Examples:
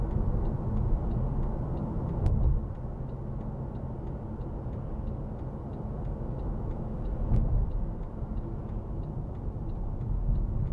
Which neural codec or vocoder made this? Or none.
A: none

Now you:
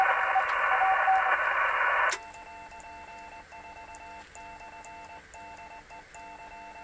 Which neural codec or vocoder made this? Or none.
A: none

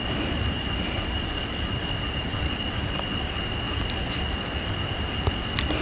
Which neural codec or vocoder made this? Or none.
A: vocoder, BigVGAN v2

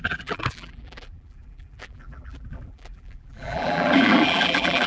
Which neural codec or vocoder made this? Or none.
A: vocoder, BigVGAN v2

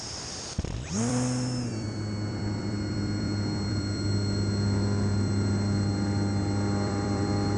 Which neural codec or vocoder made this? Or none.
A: vocoder, BigVGAN v2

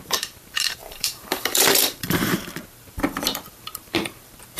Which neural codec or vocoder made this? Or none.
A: vocoder, BigVGAN v2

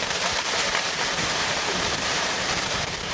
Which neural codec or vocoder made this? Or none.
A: vocoder, BigVGAN v2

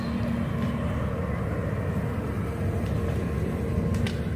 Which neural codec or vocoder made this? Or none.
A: none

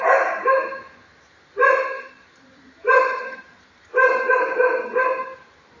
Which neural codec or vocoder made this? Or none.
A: vocoder, BigVGAN v2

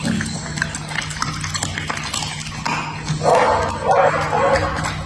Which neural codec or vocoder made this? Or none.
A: none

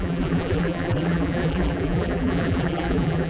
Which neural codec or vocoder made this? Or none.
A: vocoder, BigVGAN v2